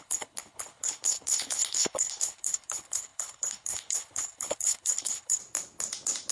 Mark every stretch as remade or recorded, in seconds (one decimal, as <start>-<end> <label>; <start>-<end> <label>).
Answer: 0.0-5.4 remade; 5.4-6.3 recorded